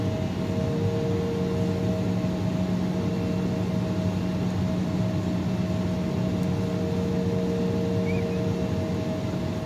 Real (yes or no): yes